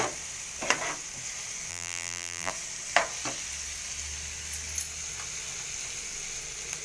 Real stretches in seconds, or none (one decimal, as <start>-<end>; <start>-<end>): 0.0-1.7; 2.5-6.8